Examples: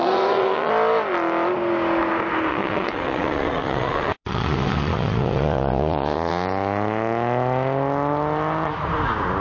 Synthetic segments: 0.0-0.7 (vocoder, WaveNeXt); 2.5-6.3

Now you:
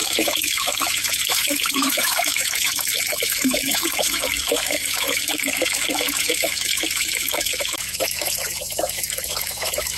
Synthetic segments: 0.0-10.0 (autoencoder, DAC-VAE)

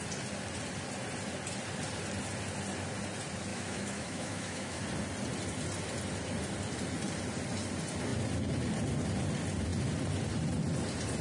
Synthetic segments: 3.5-4.8 (autoencoder, DAC-VAE)

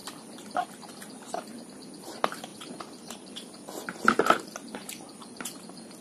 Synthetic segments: 2.5-3.3 (vocoder, BigVGAN v2)

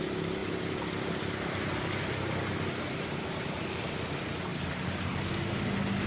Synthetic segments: 4.5-5.3 (vocoder, BigVGAN v2)

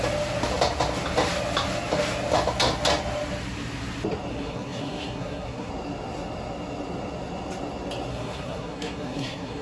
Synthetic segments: 4.3-5.7 (codec, SNAC); 8.1-9.6